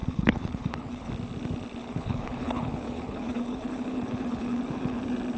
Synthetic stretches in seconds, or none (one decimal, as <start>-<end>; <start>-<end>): 0.0-1.1; 1.8-5.0